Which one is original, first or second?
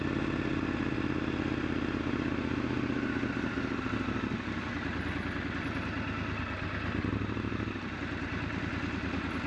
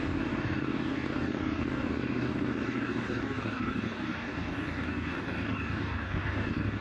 first